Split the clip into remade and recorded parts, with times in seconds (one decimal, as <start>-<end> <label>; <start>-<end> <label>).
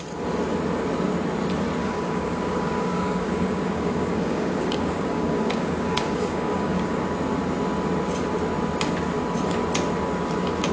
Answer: 0.0-1.8 recorded; 1.8-7.0 remade; 7.0-10.7 recorded